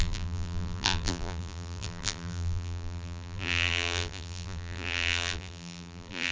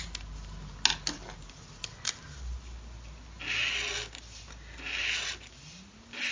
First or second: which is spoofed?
first